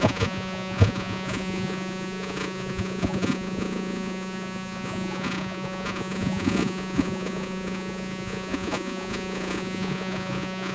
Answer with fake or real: fake